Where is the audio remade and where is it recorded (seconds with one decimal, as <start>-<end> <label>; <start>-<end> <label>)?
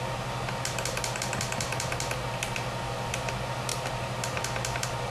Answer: 0.0-5.1 recorded